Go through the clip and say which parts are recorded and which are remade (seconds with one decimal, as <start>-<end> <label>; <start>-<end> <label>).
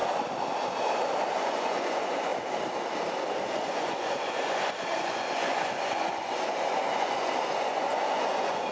0.0-1.3 recorded; 1.3-2.3 remade; 2.3-3.6 recorded; 3.6-8.7 remade